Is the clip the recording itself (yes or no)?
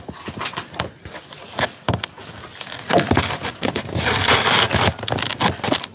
yes